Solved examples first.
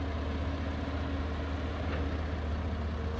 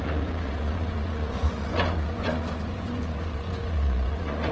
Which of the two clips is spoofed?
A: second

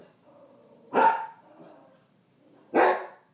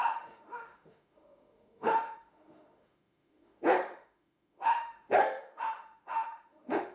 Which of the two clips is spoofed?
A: second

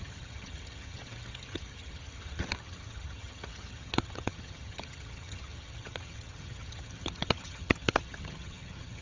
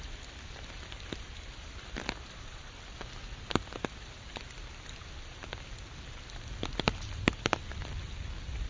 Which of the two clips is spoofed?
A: first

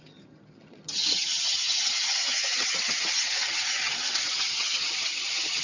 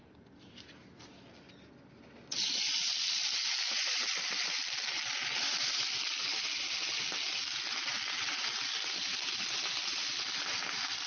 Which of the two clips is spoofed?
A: first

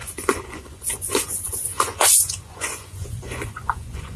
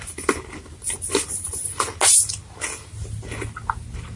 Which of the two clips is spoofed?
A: first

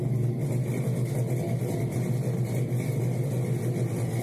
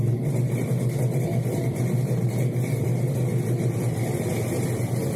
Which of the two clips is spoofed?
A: second